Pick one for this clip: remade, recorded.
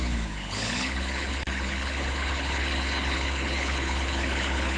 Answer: remade